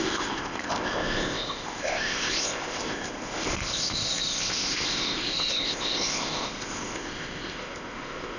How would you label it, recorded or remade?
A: remade